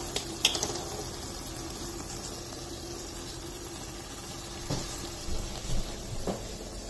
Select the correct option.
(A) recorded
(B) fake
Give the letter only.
A